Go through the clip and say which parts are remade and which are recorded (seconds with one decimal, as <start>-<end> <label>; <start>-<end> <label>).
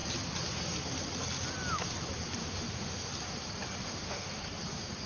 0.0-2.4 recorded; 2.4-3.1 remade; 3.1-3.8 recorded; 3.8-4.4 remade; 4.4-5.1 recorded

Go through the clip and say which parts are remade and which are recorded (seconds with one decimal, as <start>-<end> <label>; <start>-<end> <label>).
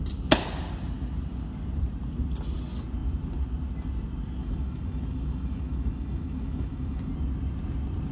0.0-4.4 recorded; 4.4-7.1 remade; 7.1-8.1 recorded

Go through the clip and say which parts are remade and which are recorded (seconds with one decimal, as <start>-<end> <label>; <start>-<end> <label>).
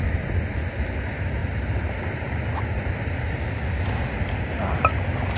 0.0-5.4 recorded